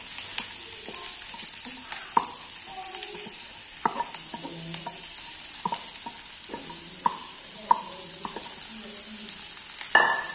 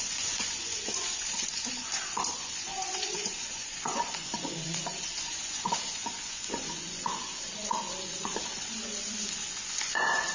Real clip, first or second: first